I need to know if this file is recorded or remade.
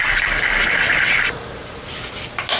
recorded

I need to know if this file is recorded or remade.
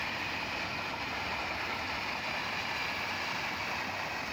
recorded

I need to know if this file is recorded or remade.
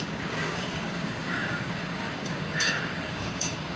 remade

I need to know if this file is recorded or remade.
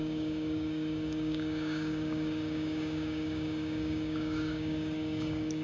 remade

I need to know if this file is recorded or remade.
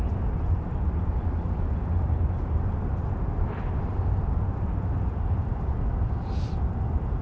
recorded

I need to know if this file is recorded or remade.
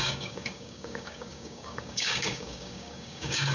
remade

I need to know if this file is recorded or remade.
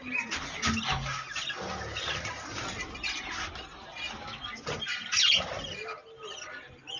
recorded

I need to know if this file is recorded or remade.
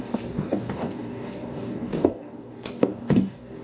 remade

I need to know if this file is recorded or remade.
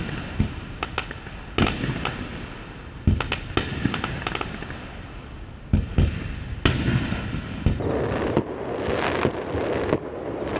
recorded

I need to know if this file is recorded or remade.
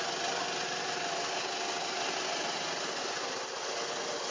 recorded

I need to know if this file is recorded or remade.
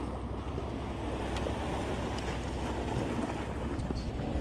recorded